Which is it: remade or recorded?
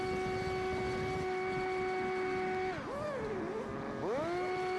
recorded